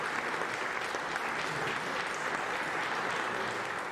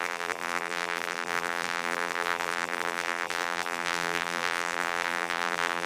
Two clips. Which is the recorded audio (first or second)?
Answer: first